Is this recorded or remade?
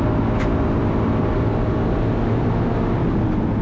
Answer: recorded